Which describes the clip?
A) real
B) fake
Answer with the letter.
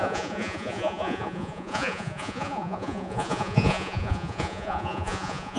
B